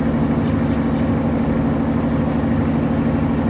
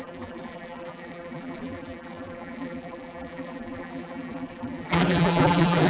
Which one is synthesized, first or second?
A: second